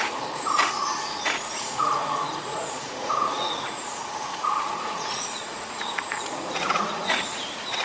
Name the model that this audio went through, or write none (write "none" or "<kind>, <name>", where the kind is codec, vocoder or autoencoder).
vocoder, Vocos